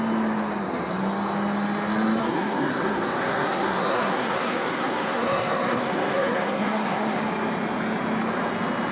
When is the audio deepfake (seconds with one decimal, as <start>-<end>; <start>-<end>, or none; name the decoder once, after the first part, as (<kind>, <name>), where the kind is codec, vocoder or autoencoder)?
2.2-7.2 (codec, SNAC)